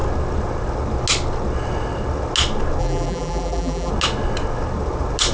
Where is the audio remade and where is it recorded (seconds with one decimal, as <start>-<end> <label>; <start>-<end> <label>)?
0.0-2.8 recorded; 2.8-3.9 remade; 3.9-5.3 recorded